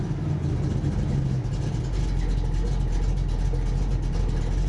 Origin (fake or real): real